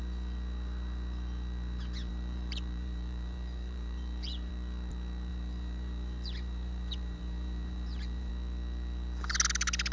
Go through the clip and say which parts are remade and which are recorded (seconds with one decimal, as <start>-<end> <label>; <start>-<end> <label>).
0.0-2.1 recorded; 2.1-4.5 remade; 4.5-5.3 recorded; 5.3-8.3 remade; 8.3-9.9 recorded